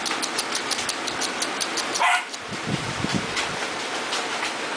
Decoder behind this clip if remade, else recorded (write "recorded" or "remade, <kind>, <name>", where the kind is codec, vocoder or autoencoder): recorded